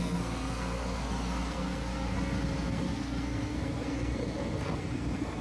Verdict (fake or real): fake